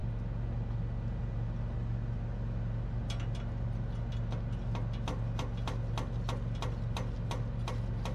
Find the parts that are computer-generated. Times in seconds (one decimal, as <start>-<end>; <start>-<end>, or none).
none